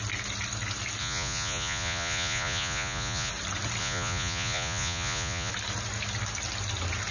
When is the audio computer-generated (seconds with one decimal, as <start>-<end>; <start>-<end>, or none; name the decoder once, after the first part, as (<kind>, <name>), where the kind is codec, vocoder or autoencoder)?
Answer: 1.0-3.3 (vocoder, Vocos); 3.8-5.5